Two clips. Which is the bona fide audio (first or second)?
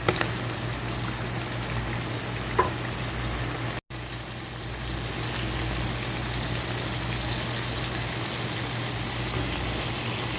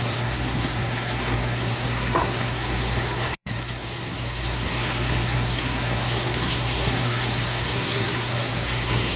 first